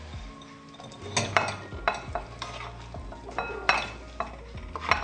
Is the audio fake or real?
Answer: real